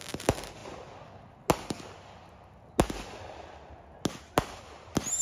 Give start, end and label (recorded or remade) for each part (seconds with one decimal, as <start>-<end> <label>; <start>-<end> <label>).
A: 0.0-5.2 recorded